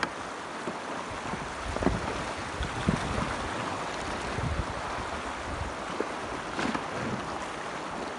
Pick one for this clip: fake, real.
real